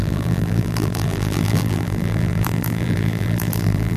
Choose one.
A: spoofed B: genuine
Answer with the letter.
A